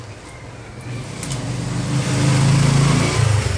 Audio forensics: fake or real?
real